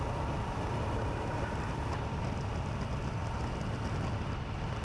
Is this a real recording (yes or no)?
yes